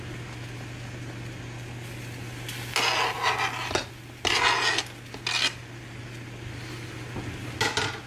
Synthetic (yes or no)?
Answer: no